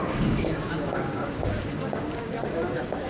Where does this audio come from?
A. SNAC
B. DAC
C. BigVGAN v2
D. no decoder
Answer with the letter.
B